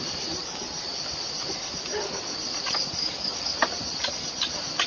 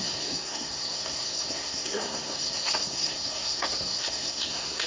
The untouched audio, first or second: first